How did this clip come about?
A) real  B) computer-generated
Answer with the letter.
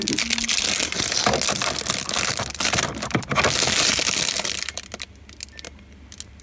A